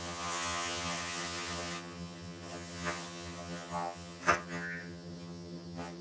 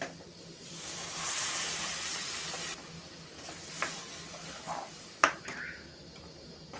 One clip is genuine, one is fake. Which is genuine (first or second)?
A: second